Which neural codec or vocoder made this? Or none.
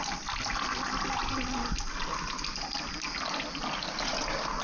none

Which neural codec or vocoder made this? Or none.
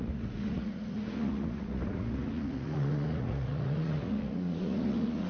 vocoder, Vocos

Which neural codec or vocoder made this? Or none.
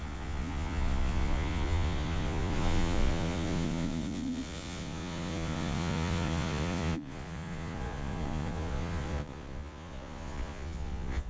vocoder, Vocos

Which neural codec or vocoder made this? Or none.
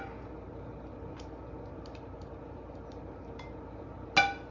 none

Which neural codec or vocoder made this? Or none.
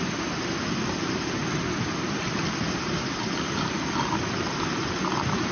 none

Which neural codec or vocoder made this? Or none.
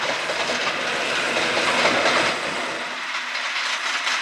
none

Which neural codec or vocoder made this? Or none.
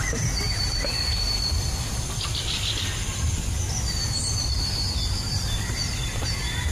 vocoder, BigVGAN v2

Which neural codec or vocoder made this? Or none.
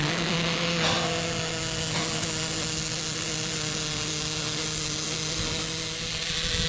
none